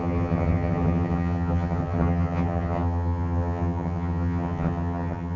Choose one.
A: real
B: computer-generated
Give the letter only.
B